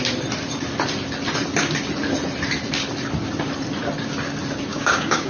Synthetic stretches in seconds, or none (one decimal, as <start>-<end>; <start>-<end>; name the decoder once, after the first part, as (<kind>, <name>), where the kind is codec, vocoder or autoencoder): 4.7-5.3 (codec, DAC)